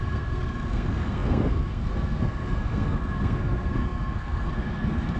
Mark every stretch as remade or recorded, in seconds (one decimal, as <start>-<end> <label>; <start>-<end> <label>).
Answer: 0.0-5.2 remade